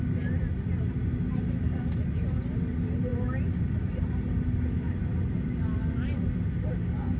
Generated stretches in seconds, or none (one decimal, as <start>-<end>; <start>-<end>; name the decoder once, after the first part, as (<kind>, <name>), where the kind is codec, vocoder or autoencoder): none

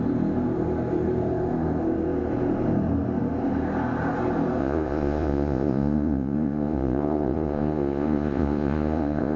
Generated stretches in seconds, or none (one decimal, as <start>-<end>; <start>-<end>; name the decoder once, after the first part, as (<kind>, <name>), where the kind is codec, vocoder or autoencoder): 4.6-9.4 (vocoder, Vocos)

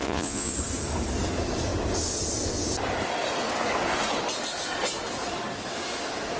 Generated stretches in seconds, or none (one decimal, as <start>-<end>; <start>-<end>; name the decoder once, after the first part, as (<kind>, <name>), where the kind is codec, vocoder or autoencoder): 0.0-0.5 (vocoder, Vocos)

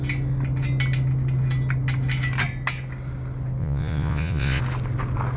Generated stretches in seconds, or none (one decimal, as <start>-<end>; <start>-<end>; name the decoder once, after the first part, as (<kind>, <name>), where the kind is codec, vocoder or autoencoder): 3.6-4.6 (vocoder, Vocos)